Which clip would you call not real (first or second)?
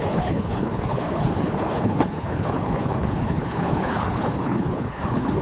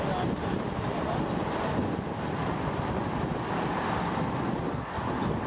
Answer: first